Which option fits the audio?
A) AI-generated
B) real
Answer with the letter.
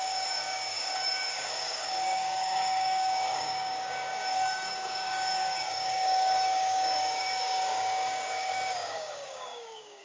A